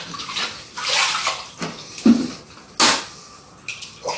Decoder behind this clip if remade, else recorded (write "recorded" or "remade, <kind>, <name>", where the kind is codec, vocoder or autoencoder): recorded